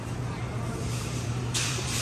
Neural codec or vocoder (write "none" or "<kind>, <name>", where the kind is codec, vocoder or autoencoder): vocoder, BigVGAN v2